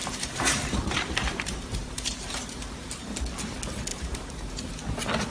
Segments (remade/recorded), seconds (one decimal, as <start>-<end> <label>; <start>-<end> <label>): 0.0-3.2 remade; 3.2-3.9 recorded; 3.9-4.5 remade; 4.5-5.3 recorded